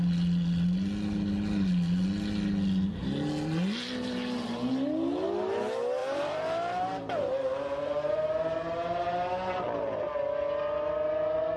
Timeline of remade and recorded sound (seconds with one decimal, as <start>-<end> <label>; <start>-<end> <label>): 0.0-6.0 recorded; 6.0-9.6 remade; 9.6-11.6 recorded